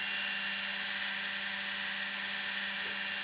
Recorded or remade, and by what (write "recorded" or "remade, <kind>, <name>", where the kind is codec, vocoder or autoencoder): recorded